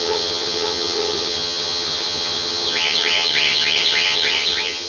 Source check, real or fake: fake